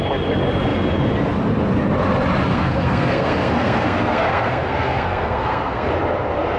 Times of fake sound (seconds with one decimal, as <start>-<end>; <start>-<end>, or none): 2.5-5.9